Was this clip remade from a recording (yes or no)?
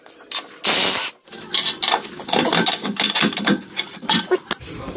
no